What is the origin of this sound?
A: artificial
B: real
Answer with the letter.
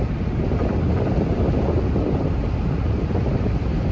B